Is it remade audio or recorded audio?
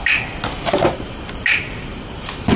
recorded